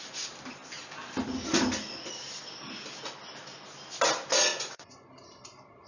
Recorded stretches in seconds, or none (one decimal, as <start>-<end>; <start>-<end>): 0.0-4.5; 5.1-5.9